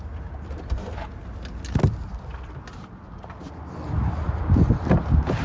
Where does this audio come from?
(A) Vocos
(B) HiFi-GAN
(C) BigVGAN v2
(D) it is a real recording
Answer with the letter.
D